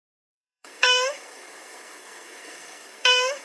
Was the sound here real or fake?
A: fake